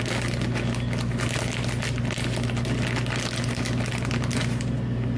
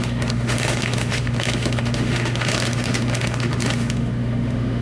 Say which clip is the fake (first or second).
second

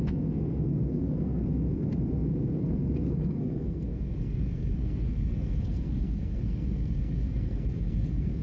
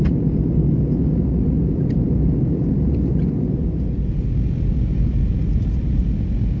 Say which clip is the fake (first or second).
first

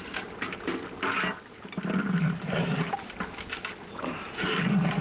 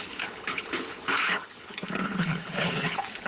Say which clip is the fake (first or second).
second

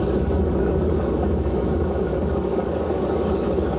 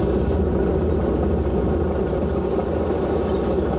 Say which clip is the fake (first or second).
first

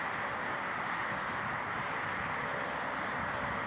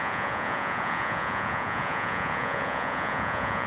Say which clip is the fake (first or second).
second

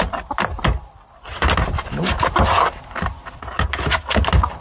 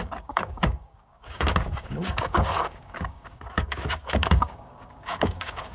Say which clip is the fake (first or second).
second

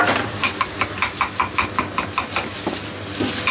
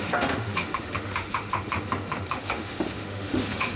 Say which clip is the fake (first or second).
second